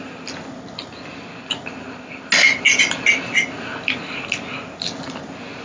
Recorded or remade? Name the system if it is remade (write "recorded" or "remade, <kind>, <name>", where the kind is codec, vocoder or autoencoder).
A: recorded